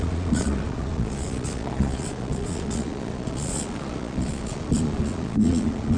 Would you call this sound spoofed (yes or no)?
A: yes